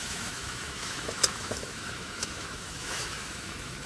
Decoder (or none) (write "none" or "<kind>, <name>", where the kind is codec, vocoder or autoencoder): autoencoder, DAC-VAE